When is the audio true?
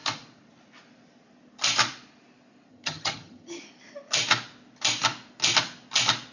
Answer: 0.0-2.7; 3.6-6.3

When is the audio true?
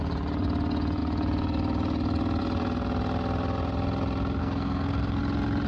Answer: 0.0-4.4; 5.2-5.7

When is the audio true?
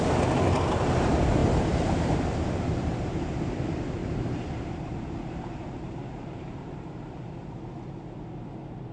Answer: 0.0-1.4; 3.2-4.0; 7.6-8.9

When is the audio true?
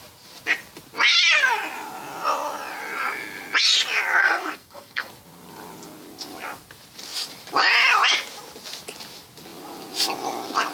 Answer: 0.0-4.2; 5.1-10.7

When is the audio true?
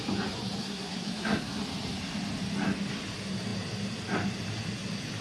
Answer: 0.0-0.6; 1.6-5.2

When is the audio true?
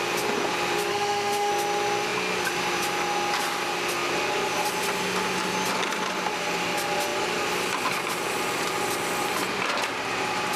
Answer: 0.0-0.9; 1.5-10.6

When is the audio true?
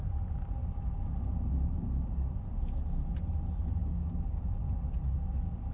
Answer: 0.0-3.8; 4.4-5.7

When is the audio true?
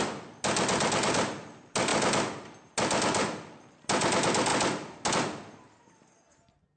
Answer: 0.0-6.8